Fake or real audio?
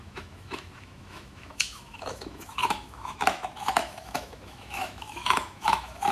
fake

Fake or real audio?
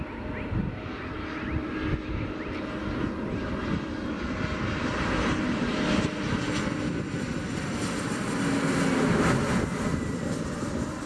real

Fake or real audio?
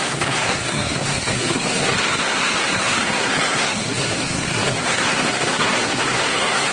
fake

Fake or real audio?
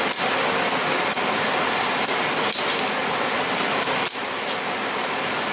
real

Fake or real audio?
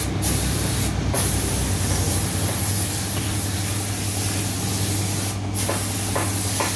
real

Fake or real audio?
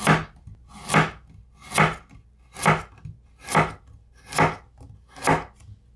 real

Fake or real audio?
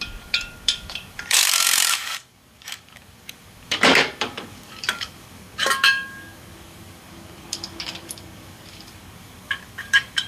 fake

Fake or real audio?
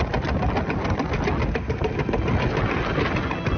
real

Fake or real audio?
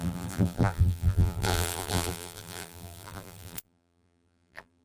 fake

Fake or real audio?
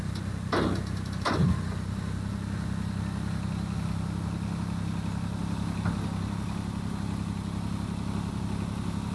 real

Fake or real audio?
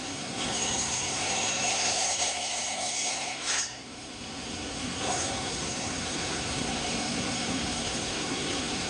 fake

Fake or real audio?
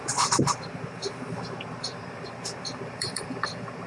fake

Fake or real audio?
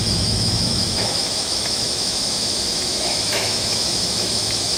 fake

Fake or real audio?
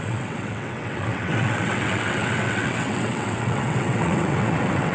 fake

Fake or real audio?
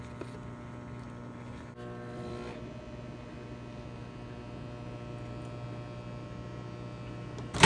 real